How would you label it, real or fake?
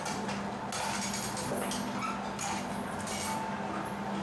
real